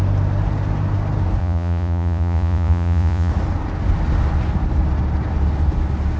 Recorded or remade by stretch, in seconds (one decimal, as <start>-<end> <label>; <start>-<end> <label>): 0.0-1.4 recorded; 1.4-3.3 remade; 3.3-6.2 recorded